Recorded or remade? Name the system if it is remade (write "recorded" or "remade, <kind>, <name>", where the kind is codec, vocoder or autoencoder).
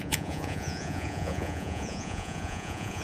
remade, vocoder, Vocos